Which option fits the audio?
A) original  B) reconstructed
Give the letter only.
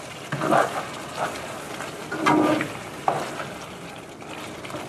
A